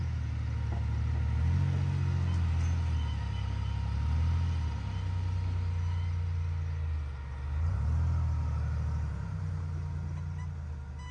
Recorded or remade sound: recorded